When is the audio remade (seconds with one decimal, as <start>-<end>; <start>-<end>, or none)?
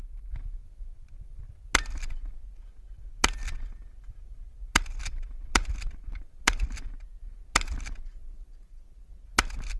8.2-9.1